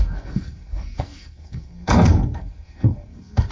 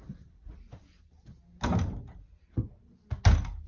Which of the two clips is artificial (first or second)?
first